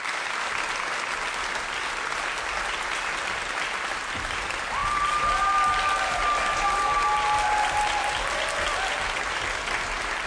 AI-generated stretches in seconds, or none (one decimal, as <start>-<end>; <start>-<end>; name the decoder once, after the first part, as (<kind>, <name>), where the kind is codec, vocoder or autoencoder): none